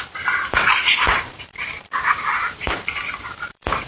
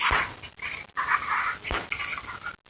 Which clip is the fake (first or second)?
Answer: first